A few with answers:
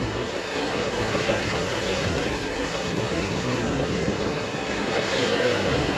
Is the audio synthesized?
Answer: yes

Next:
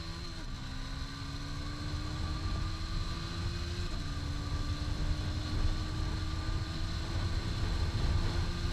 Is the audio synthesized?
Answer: no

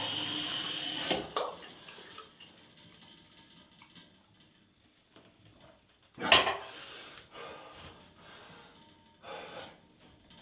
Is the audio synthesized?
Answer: no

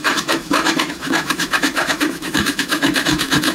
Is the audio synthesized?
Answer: yes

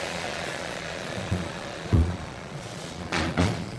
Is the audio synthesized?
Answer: yes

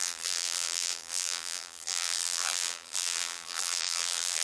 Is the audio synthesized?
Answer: yes